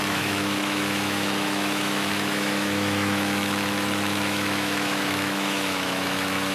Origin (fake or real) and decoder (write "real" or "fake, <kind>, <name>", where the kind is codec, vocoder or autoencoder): fake, autoencoder, DAC-VAE